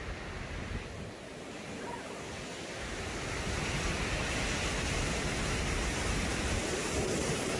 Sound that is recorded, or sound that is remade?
recorded